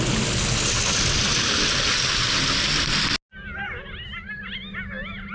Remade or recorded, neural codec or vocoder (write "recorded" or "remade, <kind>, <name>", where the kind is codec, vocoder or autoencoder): recorded